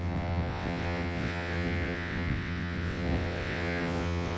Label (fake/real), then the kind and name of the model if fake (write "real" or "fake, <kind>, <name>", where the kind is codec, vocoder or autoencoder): fake, vocoder, WaveNeXt